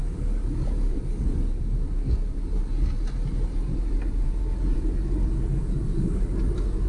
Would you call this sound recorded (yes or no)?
yes